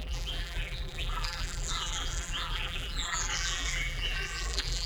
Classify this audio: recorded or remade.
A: remade